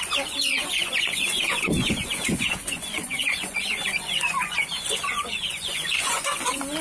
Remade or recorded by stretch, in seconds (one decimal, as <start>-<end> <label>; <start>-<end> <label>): 0.0-6.8 remade